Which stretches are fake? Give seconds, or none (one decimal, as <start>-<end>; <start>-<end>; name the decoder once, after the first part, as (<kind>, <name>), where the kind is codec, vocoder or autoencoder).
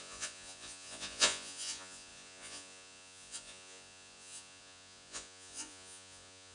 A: 0.0-6.5 (vocoder, Vocos)